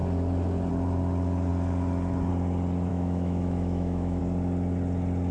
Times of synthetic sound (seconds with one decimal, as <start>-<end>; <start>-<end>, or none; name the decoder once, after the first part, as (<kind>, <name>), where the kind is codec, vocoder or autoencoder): 2.9-4.2 (autoencoder, DAC-VAE)